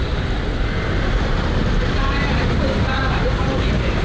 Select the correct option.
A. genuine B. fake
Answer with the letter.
B